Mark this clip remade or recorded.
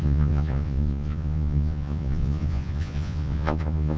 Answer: remade